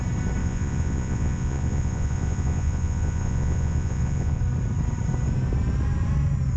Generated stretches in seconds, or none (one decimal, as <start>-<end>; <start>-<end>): 0.4-4.4